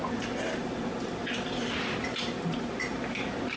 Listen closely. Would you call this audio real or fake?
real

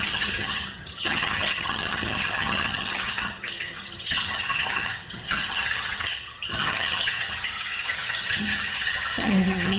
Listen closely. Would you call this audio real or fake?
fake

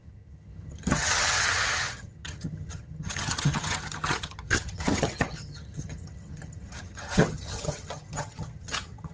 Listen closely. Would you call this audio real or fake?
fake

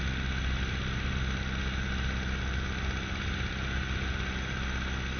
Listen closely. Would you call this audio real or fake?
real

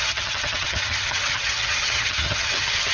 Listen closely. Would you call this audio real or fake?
fake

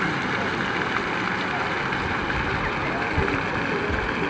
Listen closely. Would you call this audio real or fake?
real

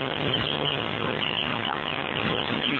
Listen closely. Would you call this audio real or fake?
fake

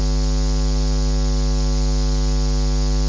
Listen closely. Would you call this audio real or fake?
real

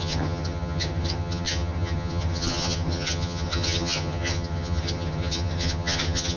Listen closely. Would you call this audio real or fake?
fake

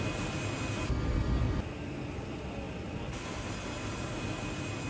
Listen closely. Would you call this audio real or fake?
real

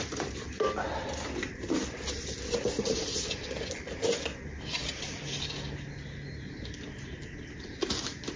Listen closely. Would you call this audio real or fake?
real